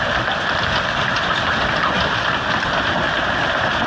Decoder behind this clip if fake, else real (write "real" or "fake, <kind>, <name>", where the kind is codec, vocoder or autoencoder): real